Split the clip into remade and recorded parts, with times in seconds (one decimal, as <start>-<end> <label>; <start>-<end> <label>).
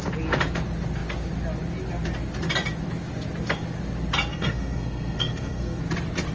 0.0-4.3 recorded; 4.3-5.8 remade; 5.8-6.3 recorded